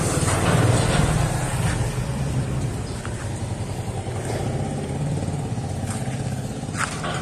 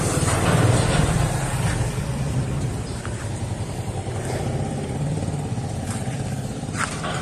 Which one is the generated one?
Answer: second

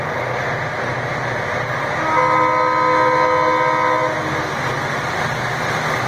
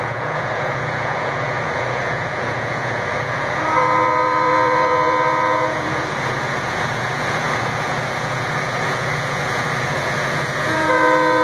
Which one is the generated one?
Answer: second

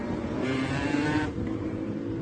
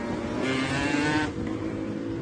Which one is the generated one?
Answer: first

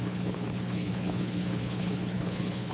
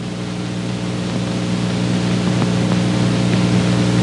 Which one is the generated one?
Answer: first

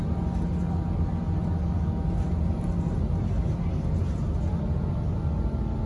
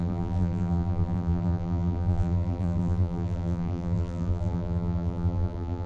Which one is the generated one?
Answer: second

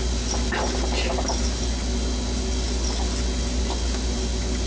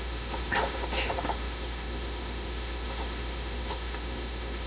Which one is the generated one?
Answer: second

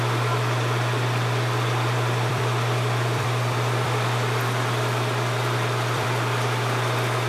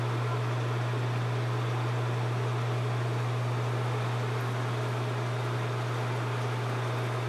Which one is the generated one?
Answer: first